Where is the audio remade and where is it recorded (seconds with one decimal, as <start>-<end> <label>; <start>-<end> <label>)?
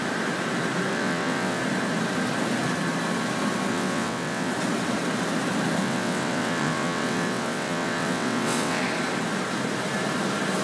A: 0.0-0.9 recorded; 0.9-1.6 remade; 1.6-3.7 recorded; 3.7-4.5 remade; 4.5-5.8 recorded; 5.8-8.8 remade; 8.8-10.6 recorded